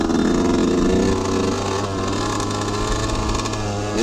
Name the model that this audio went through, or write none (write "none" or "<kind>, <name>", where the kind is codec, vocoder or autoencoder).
none